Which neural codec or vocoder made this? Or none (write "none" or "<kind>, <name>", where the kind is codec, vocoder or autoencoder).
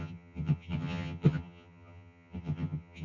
vocoder, HiFi-GAN